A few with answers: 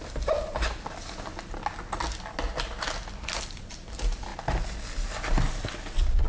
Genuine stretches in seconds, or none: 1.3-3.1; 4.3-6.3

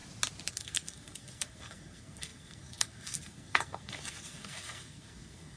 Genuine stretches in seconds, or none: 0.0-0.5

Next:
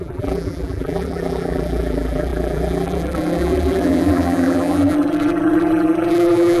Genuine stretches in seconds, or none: none